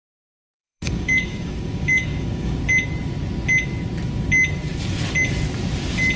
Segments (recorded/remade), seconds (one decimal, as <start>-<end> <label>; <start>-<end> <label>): 0.0-0.5 recorded; 0.5-2.6 remade; 2.6-6.2 recorded